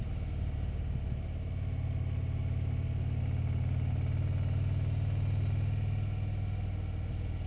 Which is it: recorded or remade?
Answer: recorded